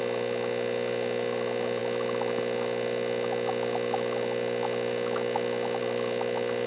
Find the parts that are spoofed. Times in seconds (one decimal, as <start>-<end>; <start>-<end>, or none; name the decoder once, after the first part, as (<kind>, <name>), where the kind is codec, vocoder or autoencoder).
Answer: none